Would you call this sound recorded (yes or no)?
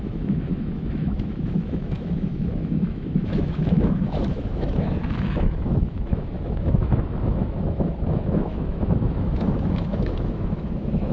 no